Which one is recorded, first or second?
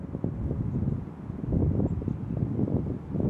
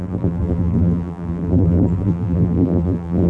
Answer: first